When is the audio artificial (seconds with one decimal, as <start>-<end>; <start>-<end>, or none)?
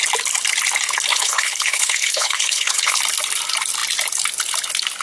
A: 1.1-3.0